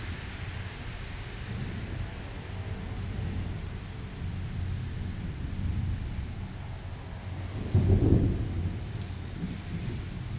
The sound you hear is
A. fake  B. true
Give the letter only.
B